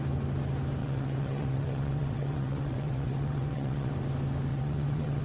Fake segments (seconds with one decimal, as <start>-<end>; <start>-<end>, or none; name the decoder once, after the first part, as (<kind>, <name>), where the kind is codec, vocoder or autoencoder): 0.8-3.9 (vocoder, WaveNeXt); 4.5-5.2